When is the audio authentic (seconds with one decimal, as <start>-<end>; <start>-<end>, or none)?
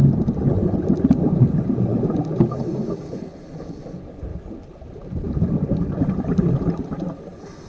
0.0-1.9; 3.2-4.3; 6.5-7.7